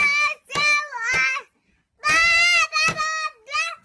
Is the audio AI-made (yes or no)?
no